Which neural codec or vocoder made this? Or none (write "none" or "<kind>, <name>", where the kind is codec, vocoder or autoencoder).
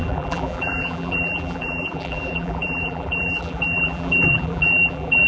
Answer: vocoder, BigVGAN v2